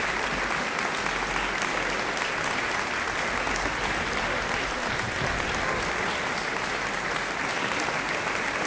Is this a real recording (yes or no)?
yes